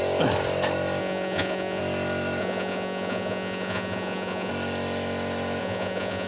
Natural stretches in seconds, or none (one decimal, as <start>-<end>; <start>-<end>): 0.0-1.0; 1.8-2.4; 4.5-5.6